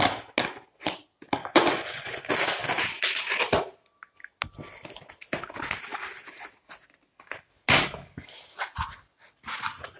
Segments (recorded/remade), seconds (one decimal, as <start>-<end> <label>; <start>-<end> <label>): 0.0-1.4 recorded; 1.4-2.2 remade; 2.2-10.0 recorded